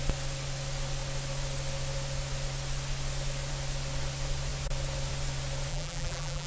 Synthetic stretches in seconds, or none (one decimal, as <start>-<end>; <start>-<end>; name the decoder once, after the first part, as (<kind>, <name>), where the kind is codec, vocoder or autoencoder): 5.7-6.5 (vocoder, BigVGAN v2)